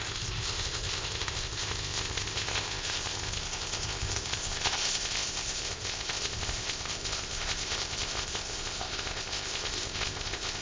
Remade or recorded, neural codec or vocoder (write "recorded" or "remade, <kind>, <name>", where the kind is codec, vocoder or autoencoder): remade, codec, ZipCodec